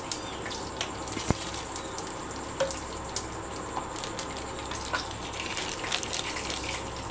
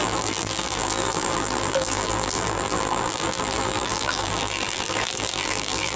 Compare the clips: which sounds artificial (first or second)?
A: second